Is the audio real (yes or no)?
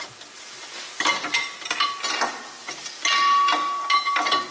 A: yes